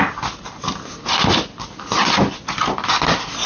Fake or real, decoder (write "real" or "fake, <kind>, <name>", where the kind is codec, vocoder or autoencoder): real